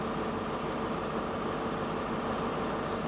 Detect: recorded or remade recorded